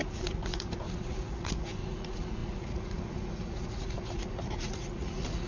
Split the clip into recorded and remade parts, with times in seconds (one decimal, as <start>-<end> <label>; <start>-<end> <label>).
0.0-5.5 remade